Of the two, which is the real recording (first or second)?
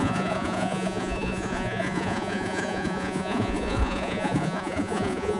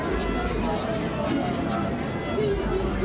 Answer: second